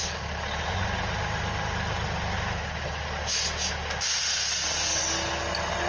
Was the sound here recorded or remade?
recorded